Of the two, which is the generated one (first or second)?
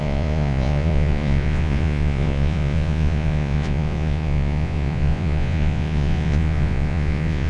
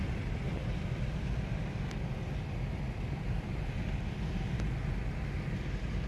first